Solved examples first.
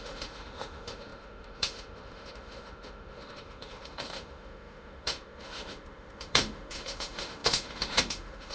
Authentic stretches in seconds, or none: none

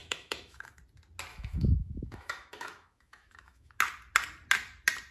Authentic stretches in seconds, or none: 0.8-1.3; 3.8-5.1